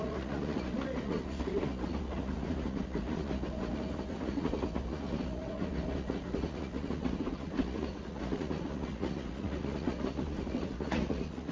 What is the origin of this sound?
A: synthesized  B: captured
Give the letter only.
A